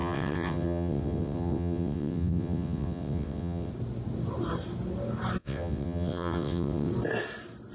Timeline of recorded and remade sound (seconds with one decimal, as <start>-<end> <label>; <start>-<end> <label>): 0.0-3.7 remade; 3.7-5.4 recorded; 5.4-6.9 remade; 6.9-7.7 recorded

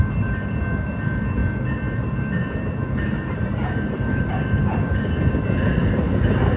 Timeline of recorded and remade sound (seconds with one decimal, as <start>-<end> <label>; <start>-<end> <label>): 0.0-1.4 recorded; 1.4-5.3 remade; 5.3-6.6 recorded

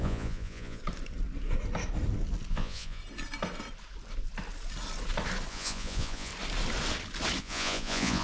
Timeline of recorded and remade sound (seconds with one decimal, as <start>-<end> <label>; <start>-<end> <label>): 0.0-0.8 remade; 0.8-2.5 recorded; 2.5-3.0 remade; 3.0-5.5 recorded; 5.5-6.3 remade; 6.3-7.4 recorded; 7.4-8.2 remade